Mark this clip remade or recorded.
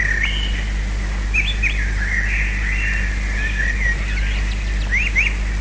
recorded